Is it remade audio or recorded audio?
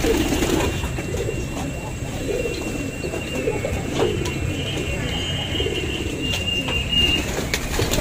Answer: recorded